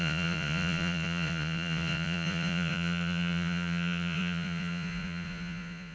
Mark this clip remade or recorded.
remade